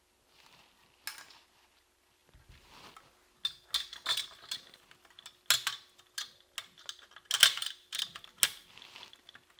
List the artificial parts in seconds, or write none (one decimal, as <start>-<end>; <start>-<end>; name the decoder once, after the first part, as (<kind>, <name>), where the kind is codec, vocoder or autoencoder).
none